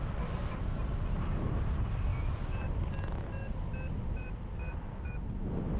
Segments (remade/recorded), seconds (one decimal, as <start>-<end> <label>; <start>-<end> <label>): 0.0-5.8 recorded